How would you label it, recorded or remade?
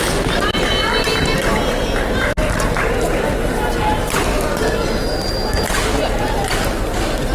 recorded